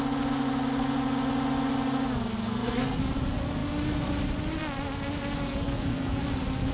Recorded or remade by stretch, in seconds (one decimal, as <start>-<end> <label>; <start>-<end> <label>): 0.0-2.4 recorded; 2.4-3.0 remade; 3.0-5.5 recorded; 5.5-6.2 remade; 6.2-6.7 recorded